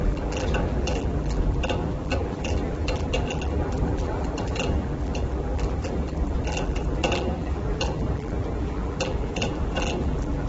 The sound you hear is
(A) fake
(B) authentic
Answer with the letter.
A